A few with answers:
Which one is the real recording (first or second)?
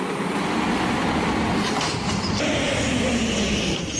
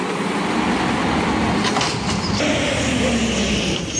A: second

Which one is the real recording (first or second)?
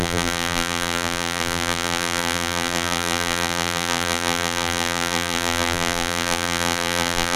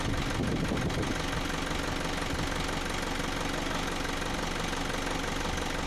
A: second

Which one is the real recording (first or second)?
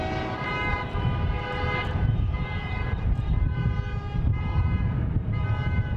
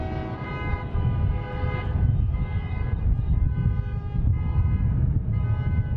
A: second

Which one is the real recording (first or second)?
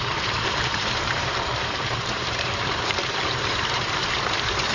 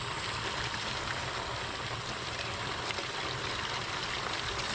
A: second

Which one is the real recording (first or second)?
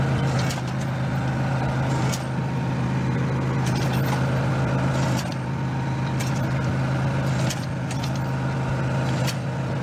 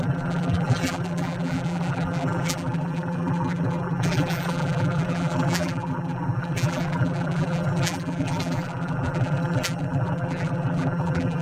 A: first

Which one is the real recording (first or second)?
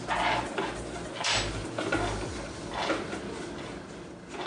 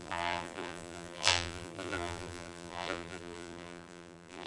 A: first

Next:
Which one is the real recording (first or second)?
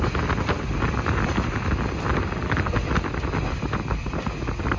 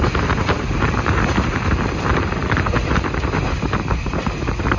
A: first